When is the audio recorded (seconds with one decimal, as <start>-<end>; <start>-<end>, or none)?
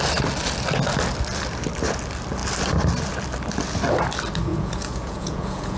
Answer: 0.0-4.5